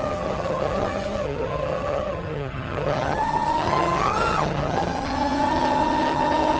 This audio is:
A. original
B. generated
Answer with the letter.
B